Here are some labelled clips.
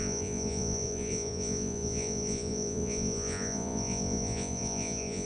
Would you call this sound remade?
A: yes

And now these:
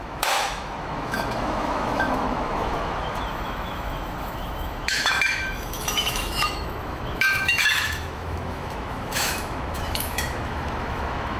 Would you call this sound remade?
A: yes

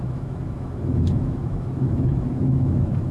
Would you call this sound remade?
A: yes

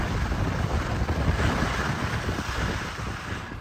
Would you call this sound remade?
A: no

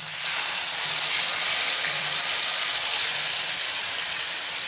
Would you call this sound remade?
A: yes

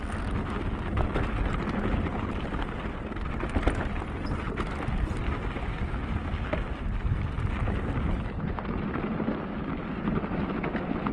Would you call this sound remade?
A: no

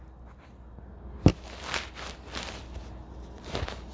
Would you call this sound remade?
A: no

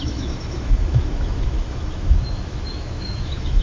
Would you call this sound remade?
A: yes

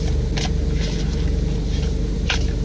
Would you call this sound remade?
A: no